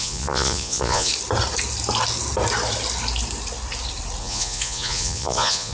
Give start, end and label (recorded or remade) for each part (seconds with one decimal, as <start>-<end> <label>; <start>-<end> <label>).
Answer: 0.0-1.1 remade; 1.1-4.2 recorded; 4.2-5.7 remade